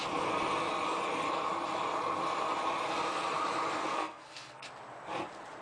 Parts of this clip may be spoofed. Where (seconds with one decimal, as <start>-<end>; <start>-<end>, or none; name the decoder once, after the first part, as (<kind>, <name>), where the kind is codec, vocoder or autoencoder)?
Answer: 3.8-4.7 (codec, SNAC)